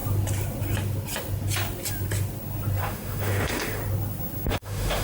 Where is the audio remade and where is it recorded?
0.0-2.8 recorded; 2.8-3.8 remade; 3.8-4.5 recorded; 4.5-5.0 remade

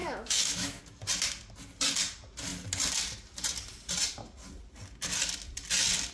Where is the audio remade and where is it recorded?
0.0-0.8 remade; 0.8-6.1 recorded

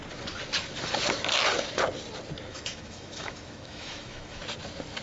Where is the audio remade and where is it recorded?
0.0-2.5 recorded; 2.5-4.4 remade; 4.4-5.0 recorded

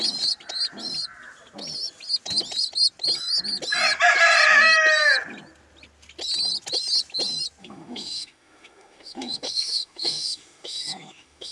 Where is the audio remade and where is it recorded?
0.0-7.6 recorded; 7.6-11.5 remade